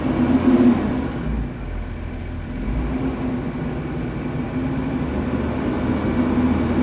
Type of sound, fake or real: real